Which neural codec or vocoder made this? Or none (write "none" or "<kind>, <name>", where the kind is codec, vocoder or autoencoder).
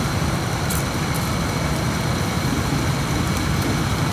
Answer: vocoder, BigVGAN v2